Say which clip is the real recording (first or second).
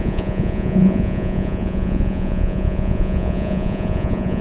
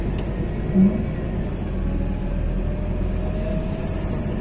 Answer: second